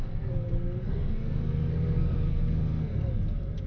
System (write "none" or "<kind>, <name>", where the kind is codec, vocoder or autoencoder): codec, SNAC